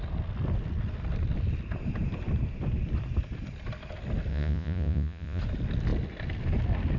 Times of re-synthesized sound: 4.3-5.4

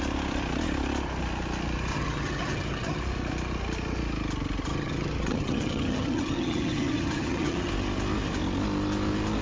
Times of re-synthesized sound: 1.9-3.0; 4.7-7.7

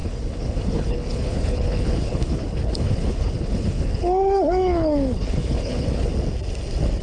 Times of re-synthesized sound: 0.0-6.1

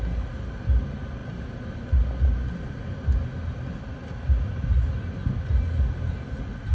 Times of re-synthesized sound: none

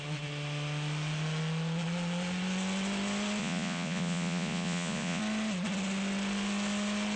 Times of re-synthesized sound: 3.4-5.2

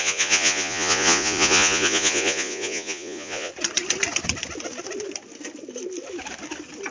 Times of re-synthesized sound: 0.0-3.5

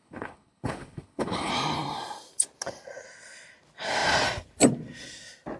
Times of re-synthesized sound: 0.0-1.5